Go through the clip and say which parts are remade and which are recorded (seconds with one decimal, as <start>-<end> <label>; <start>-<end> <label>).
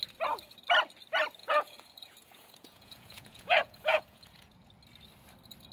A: 0.0-1.4 recorded; 1.4-4.7 remade; 4.7-5.7 recorded